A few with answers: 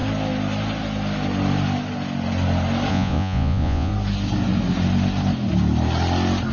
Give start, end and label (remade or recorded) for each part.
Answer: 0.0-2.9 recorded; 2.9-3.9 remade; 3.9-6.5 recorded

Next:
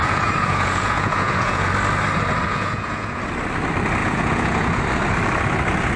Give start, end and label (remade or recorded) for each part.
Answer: 0.0-1.7 remade; 1.7-2.5 recorded; 2.5-3.2 remade; 3.2-4.0 recorded; 4.0-4.8 remade; 4.8-6.0 recorded